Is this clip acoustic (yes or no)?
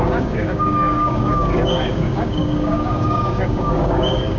no